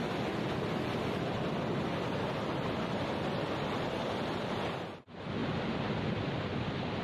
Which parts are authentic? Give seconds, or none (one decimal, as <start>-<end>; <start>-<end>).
0.0-7.0